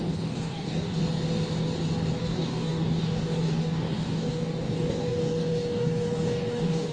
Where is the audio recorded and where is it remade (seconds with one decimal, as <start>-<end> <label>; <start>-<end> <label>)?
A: 0.0-1.0 remade; 1.0-2.2 recorded; 2.2-6.9 remade

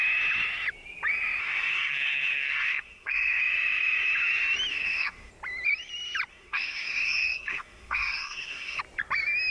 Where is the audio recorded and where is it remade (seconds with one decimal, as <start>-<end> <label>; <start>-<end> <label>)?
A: 0.0-1.4 recorded; 1.4-3.4 remade; 3.4-4.7 recorded; 4.7-5.3 remade; 5.3-6.3 recorded; 6.3-8.8 remade; 8.8-9.5 recorded

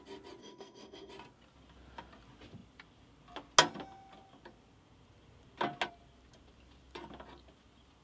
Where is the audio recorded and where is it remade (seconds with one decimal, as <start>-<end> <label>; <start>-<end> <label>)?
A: 0.0-0.4 recorded; 0.4-1.1 remade; 1.1-8.0 recorded